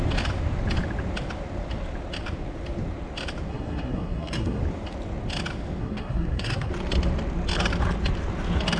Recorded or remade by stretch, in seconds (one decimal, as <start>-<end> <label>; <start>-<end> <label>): 0.0-3.5 recorded; 3.5-4.6 remade; 4.6-5.8 recorded; 5.8-6.7 remade; 6.7-8.8 recorded